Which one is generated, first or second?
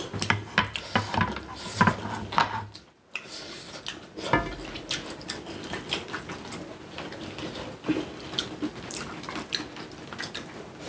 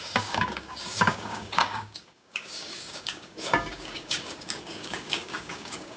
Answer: second